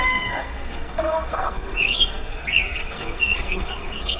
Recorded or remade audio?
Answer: remade